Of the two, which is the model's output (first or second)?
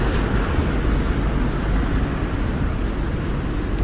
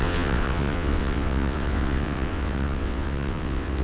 second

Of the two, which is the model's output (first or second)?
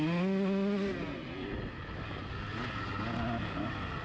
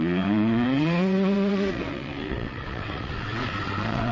second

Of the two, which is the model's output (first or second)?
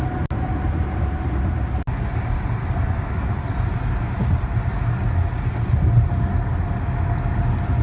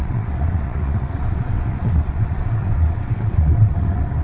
second